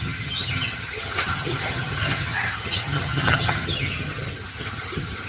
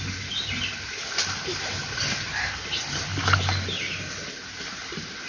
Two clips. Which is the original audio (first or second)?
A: second